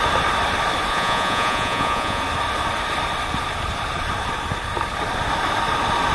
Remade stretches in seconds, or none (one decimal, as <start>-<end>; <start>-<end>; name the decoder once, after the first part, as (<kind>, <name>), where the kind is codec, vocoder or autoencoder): 0.9-2.2 (vocoder, Vocos)